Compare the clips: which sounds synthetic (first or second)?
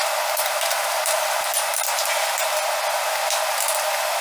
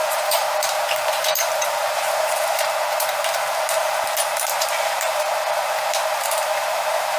second